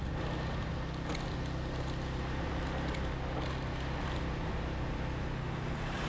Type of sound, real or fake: real